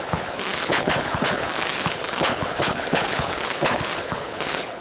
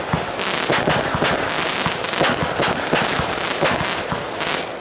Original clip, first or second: second